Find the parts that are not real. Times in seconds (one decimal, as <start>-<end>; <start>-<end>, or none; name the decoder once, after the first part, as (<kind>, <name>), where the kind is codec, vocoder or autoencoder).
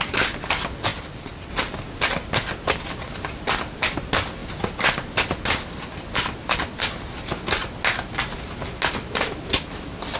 none